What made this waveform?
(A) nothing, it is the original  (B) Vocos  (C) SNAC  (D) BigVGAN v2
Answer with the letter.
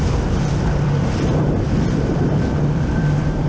D